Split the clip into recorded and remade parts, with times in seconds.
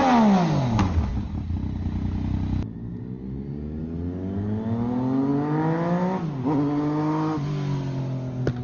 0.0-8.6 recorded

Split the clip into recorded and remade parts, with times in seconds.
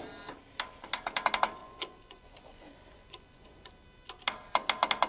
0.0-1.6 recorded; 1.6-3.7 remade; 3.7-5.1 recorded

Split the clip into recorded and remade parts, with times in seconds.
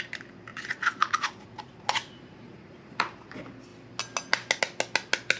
0.0-0.5 recorded; 0.5-3.3 remade; 3.3-5.4 recorded